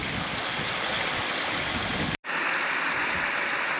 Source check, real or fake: real